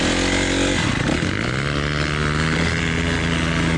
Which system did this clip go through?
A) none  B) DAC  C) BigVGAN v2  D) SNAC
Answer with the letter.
A